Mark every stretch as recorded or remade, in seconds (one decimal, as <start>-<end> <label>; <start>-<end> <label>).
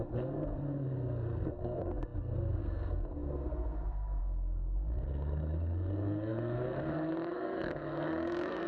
0.0-8.7 remade